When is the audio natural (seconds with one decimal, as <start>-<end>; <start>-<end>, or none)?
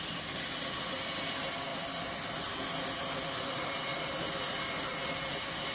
0.0-5.7